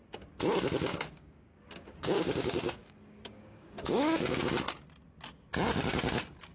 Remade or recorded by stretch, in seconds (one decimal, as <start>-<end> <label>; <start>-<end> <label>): 0.0-0.9 recorded; 0.9-4.4 remade; 4.4-6.5 recorded